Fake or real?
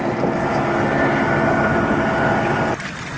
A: real